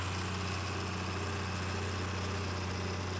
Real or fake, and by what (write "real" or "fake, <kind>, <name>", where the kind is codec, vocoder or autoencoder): real